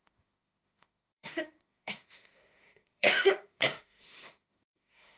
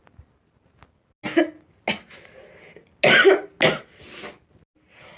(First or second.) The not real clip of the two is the first